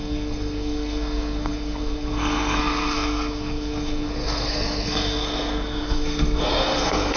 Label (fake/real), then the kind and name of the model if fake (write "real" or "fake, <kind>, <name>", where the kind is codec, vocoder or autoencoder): fake, codec, SNAC